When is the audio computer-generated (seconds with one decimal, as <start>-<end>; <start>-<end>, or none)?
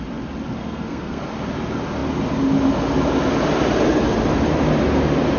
0.6-1.2